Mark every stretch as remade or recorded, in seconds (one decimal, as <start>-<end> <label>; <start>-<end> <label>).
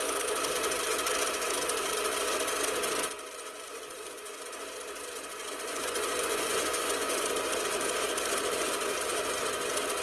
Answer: 0.0-3.5 recorded; 3.5-4.5 remade; 4.5-5.4 recorded; 5.4-7.3 remade; 7.3-10.0 recorded